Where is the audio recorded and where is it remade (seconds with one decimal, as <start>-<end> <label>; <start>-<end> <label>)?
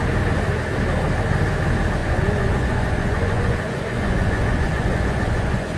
0.0-2.0 recorded; 2.0-5.8 remade